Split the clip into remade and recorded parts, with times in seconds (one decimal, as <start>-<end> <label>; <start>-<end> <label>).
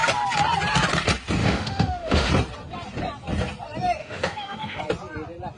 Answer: 0.0-1.4 recorded; 1.4-2.3 remade; 2.3-4.0 recorded; 4.0-4.8 remade; 4.8-5.6 recorded